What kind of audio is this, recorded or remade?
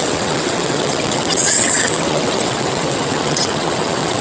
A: remade